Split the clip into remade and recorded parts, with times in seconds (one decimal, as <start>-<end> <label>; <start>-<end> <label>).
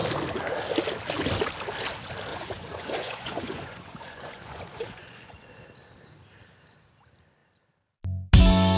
0.0-2.3 recorded; 2.3-5.6 remade; 5.6-8.8 recorded